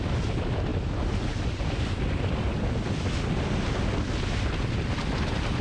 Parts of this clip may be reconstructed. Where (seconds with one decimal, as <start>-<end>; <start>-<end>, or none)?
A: none